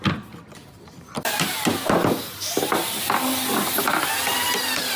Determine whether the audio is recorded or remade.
recorded